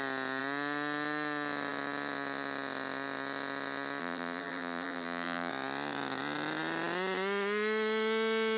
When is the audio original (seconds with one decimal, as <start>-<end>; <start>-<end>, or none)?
0.0-4.0; 5.5-8.6